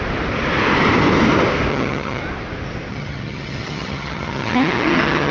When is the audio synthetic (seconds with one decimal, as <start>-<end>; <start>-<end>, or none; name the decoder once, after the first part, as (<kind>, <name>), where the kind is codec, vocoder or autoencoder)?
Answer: 1.7-2.2 (vocoder, HiFi-GAN); 2.9-5.3